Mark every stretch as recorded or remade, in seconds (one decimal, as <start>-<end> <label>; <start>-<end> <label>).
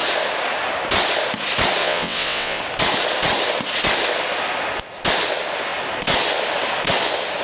0.0-1.8 recorded; 1.8-2.6 remade; 2.6-7.4 recorded